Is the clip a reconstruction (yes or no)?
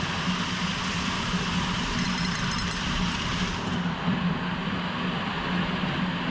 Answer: no